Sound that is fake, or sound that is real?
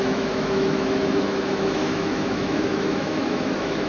fake